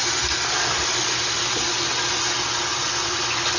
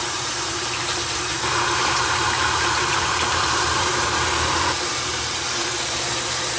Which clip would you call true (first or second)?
first